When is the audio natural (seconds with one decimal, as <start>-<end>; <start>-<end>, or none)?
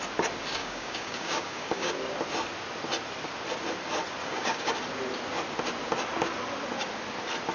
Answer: 0.0-0.6; 1.9-4.2; 4.7-7.5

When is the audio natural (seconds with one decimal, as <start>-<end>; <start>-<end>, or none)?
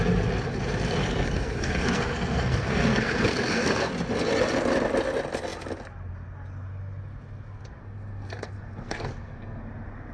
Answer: 0.0-1.0; 3.9-7.8; 9.6-10.1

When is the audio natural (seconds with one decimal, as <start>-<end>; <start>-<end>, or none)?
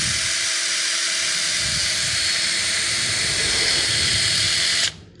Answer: 0.0-5.2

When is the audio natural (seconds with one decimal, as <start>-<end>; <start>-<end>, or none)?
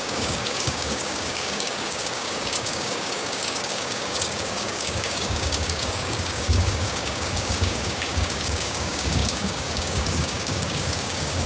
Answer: none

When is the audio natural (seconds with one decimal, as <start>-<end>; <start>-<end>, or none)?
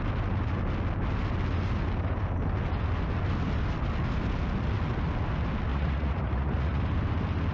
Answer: 0.0-5.7; 6.8-7.5